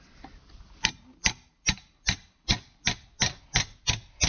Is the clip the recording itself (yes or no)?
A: yes